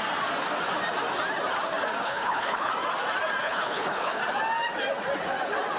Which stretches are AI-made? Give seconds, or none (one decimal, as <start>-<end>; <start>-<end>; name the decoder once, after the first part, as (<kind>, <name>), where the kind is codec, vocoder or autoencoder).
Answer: 2.0-2.7 (codec, HILCodec); 3.4-4.2